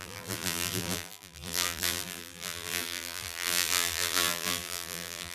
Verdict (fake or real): fake